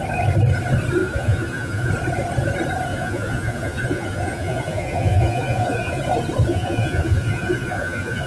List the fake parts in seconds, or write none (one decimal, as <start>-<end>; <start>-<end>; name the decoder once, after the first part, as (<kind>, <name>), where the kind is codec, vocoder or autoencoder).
1.0-1.9 (vocoder, Vocos); 2.9-6.0; 6.5-8.3